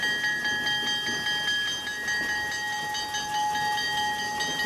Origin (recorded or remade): recorded